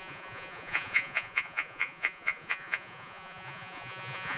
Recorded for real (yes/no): no